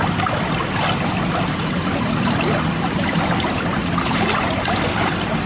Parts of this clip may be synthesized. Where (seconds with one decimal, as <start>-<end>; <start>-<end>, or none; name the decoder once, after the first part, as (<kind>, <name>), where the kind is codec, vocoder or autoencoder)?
none